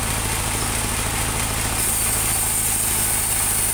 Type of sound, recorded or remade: recorded